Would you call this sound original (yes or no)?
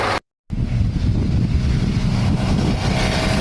yes